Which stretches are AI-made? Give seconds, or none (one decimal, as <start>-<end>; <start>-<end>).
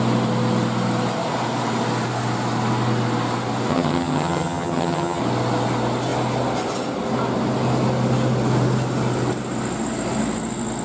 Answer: 3.7-5.2